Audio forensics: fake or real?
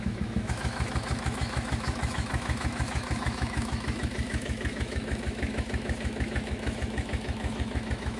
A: fake